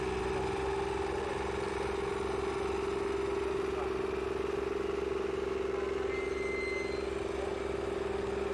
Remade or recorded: recorded